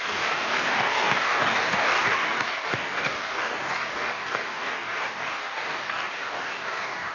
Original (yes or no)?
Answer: no